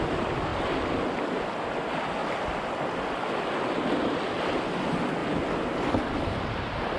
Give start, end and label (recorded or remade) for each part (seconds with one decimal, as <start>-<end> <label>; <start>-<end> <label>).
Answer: 0.0-7.0 recorded